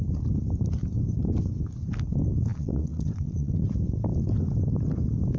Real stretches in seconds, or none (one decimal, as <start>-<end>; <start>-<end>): 0.0-2.5; 3.5-5.4